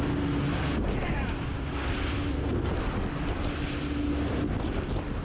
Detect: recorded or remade recorded